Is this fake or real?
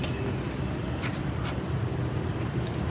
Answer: real